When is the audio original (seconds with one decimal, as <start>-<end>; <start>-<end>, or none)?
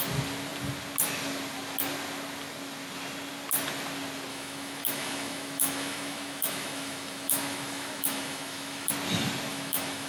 0.0-4.3; 8.9-9.5